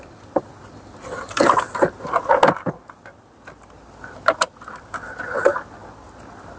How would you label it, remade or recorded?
recorded